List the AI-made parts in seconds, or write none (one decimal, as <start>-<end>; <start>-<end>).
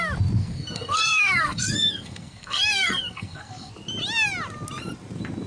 0.4-3.7